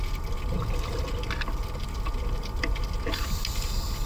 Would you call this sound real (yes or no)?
yes